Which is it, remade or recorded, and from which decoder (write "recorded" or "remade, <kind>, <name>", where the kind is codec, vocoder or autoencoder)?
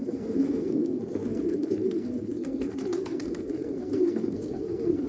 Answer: remade, codec, SNAC